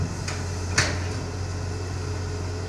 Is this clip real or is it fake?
real